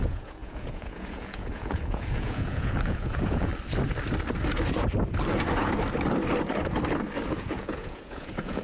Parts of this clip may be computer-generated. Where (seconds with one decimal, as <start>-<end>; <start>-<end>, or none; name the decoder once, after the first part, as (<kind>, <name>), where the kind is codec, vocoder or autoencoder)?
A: 0.0-3.5 (vocoder, Vocos); 7.4-8.6